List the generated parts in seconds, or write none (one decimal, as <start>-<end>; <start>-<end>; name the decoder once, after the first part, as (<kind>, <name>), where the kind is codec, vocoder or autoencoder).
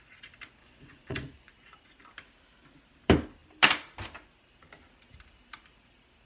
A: 0.6-1.5 (vocoder, Vocos)